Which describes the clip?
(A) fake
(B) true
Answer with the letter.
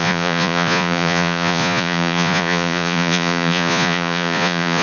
A